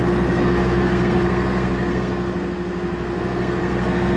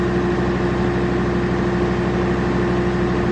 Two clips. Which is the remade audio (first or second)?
first